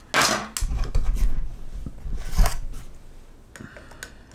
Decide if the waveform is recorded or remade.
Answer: recorded